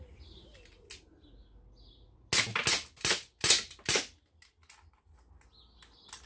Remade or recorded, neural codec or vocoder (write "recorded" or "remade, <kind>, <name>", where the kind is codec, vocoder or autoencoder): recorded